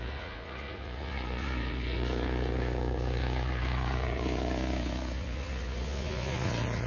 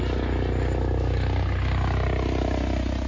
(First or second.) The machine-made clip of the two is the first